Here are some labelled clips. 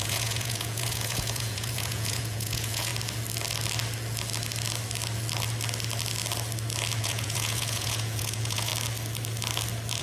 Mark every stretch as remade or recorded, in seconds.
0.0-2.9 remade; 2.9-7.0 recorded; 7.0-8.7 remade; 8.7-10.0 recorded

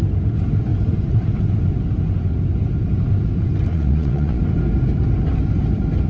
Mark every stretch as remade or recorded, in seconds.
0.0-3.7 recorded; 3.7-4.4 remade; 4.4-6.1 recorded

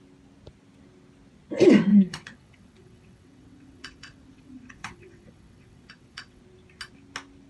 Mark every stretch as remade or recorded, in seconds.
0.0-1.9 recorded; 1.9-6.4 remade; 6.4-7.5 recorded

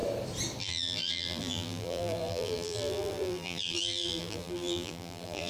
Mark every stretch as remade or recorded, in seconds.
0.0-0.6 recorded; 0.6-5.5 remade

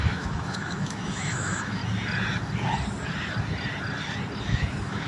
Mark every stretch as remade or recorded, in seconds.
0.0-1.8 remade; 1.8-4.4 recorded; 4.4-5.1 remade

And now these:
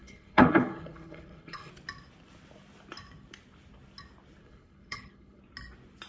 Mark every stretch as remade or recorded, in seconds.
0.0-1.7 remade; 1.7-4.4 recorded; 4.4-5.4 remade; 5.4-6.1 recorded